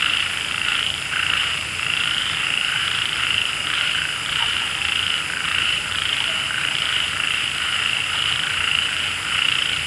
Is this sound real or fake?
fake